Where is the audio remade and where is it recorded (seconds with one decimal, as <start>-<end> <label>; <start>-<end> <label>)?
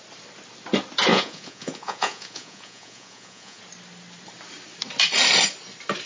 0.0-1.1 recorded; 1.1-3.6 remade; 3.6-6.1 recorded